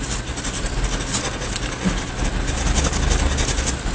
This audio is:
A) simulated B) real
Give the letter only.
B